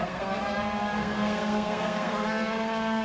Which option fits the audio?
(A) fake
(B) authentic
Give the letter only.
A